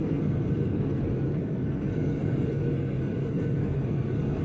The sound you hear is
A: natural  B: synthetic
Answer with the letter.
B